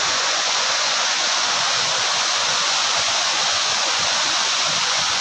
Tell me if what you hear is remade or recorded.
remade